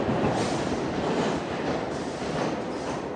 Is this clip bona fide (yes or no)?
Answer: yes